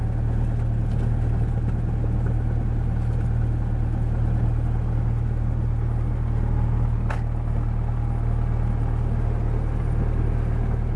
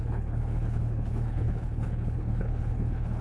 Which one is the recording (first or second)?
first